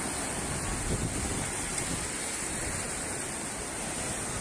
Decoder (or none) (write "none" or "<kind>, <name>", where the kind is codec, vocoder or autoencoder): none